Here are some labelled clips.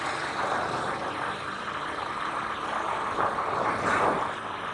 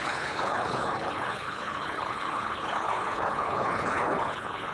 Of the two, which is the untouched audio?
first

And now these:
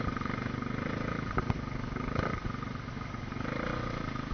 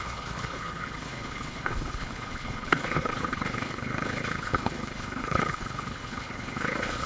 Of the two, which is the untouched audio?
first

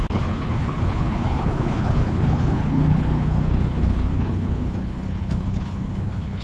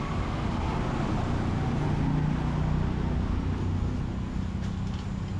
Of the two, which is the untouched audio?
second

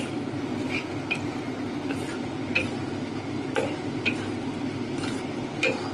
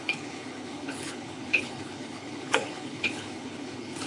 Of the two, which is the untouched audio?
first